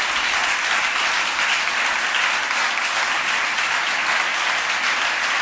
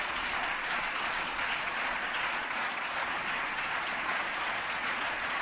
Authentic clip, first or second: first